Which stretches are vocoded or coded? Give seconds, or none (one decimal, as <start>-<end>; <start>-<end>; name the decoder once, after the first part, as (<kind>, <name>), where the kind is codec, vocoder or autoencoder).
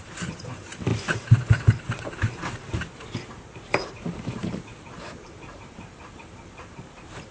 0.0-7.3 (vocoder, BigVGAN v2)